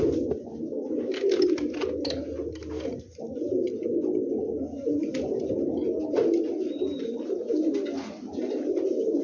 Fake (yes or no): no